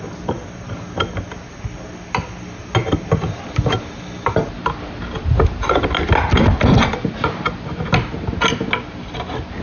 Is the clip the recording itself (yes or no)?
yes